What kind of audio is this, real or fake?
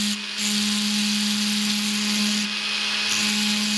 real